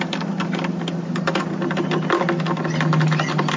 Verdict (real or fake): real